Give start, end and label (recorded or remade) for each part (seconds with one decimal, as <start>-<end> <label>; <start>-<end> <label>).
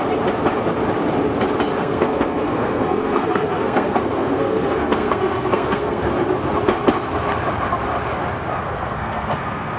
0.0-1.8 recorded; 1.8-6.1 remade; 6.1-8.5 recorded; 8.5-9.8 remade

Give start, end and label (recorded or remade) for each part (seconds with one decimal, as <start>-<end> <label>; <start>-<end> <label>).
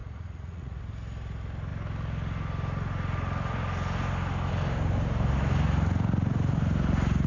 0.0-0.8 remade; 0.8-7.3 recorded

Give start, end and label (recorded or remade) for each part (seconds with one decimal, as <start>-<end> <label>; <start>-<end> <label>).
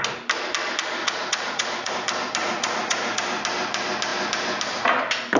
0.0-1.0 recorded; 1.0-1.9 remade; 1.9-2.4 recorded; 2.4-3.2 remade; 3.2-5.4 recorded